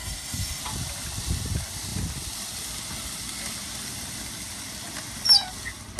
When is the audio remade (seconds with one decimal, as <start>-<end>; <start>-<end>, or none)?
0.0-0.6